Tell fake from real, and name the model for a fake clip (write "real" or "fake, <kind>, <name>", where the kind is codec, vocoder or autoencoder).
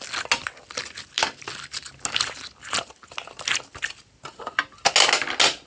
real